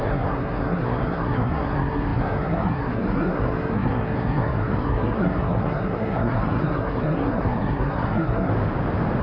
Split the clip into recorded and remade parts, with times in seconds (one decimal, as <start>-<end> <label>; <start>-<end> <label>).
0.0-8.5 remade; 8.5-9.2 recorded